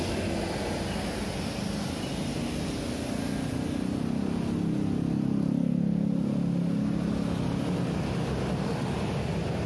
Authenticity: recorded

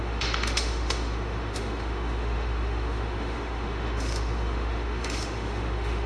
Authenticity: remade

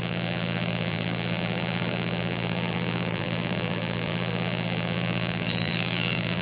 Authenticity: remade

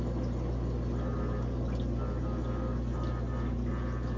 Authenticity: recorded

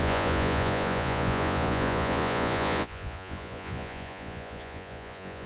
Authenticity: remade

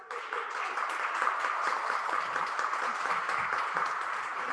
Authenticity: remade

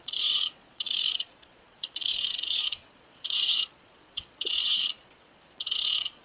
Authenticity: remade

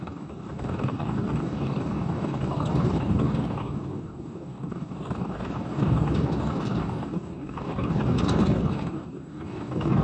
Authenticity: remade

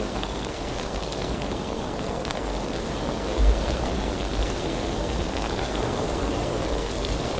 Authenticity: remade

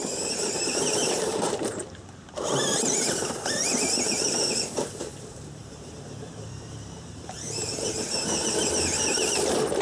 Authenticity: remade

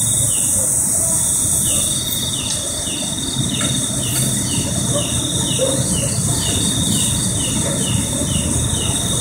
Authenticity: recorded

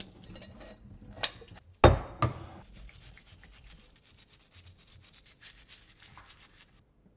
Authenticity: recorded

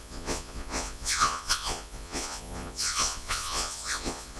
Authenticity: remade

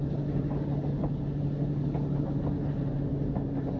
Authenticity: recorded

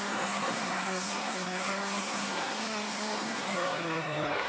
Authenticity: remade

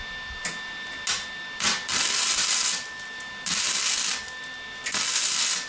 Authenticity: recorded